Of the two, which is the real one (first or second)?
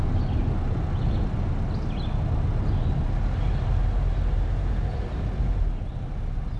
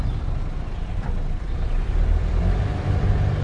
first